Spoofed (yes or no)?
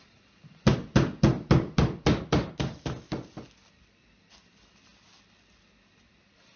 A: no